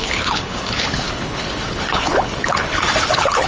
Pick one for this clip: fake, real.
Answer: fake